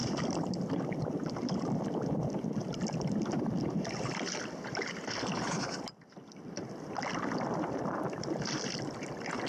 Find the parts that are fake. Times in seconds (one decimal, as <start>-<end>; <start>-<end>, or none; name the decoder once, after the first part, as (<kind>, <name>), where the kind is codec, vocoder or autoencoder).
none